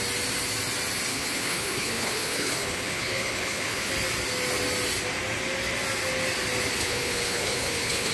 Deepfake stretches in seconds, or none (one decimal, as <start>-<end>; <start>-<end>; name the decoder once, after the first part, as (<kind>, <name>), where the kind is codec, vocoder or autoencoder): 1.1-3.9 (codec, HILCodec); 6.8-8.1